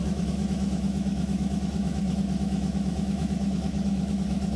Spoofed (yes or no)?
yes